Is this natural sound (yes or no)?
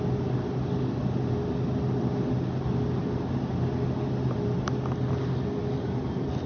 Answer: yes